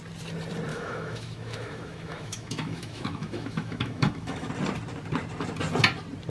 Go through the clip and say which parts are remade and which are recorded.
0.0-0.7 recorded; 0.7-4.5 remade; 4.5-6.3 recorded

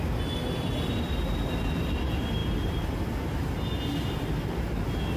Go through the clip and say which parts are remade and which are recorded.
0.0-5.2 recorded

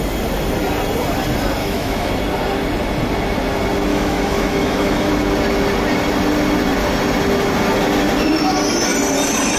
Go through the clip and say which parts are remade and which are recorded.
0.0-1.6 recorded; 1.6-2.1 remade; 2.1-3.9 recorded; 3.9-5.1 remade; 5.1-9.6 recorded